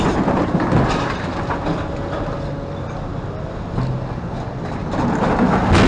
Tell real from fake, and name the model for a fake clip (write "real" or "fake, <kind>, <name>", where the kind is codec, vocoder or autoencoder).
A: real